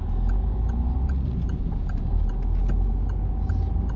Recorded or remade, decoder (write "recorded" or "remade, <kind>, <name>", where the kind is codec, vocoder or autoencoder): recorded